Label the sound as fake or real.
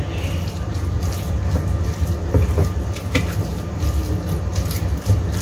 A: real